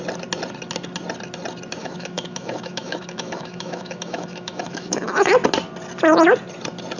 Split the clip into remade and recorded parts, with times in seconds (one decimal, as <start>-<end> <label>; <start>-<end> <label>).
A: 0.0-1.8 recorded; 1.8-5.3 remade; 5.3-7.0 recorded